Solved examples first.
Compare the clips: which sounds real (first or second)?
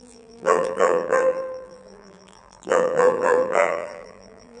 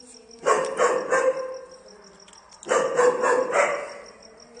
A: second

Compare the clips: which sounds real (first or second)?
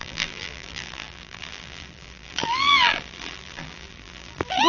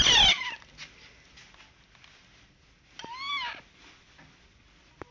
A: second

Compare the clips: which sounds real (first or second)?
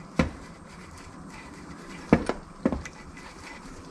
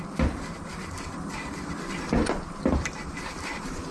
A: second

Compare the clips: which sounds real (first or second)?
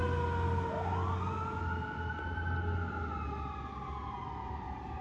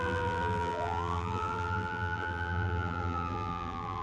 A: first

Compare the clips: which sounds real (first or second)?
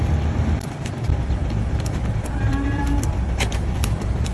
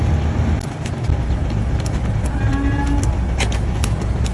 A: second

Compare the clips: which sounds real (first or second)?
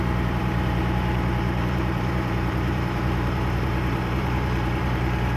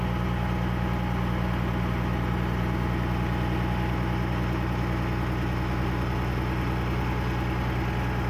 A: second